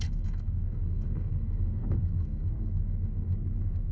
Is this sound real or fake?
fake